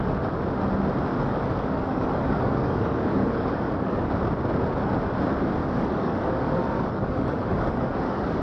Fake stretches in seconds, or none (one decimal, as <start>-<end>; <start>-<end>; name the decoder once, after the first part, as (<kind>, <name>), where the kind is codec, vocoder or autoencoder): 1.1-4.1 (codec, DAC); 5.6-8.4